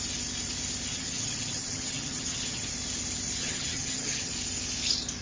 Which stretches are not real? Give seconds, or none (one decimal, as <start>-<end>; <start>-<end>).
0.9-2.7; 3.4-4.3